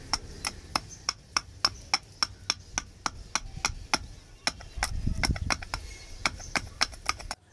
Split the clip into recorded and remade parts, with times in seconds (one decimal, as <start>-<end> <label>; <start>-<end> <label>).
0.0-1.4 remade; 1.4-5.9 recorded; 5.9-7.5 remade